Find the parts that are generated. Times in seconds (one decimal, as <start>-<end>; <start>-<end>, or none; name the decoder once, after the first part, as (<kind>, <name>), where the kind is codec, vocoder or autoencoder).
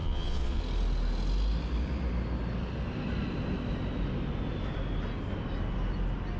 0.0-0.6 (vocoder, Vocos)